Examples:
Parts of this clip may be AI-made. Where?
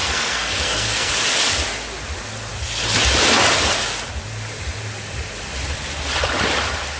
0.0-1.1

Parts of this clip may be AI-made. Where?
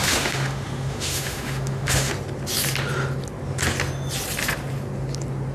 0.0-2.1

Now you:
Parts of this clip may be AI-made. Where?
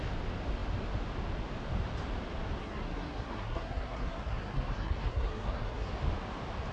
2.6-5.9